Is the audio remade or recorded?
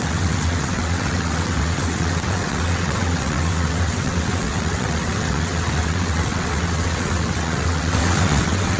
remade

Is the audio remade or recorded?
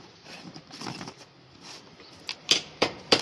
remade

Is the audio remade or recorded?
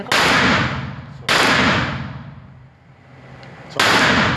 recorded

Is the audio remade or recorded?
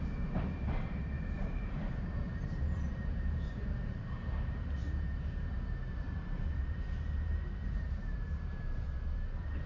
remade